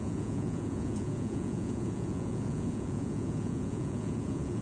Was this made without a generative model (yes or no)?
no